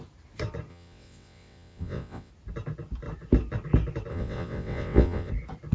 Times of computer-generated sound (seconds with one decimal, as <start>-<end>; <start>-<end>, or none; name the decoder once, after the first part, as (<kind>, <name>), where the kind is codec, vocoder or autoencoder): 0.7-2.3 (vocoder, WaveNeXt); 4.1-5.3

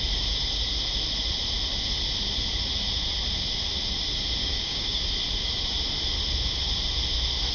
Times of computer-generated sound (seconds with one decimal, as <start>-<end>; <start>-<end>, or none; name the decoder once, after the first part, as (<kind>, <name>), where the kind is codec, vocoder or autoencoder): 4.4-5.0 (codec, DAC)